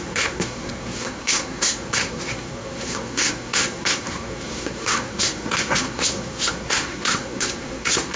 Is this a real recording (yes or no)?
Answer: no